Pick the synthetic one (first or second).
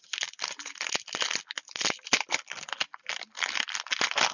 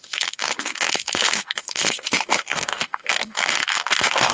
second